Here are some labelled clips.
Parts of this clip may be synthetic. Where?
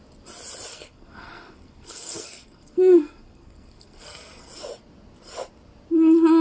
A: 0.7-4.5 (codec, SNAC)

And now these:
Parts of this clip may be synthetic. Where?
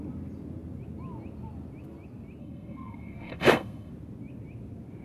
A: 2.4-3.9 (codec, SNAC)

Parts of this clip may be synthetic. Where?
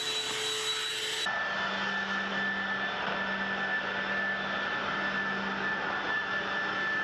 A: none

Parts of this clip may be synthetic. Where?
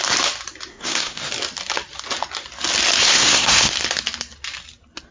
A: 0.7-1.3 (codec, SNAC); 3.0-3.7